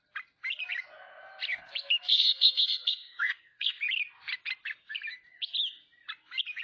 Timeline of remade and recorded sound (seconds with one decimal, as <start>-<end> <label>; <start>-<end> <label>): 0.0-2.1 recorded; 2.1-3.8 remade; 3.8-6.6 recorded